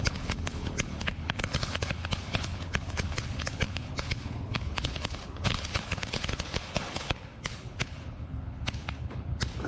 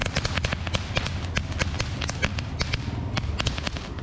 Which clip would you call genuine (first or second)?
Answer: second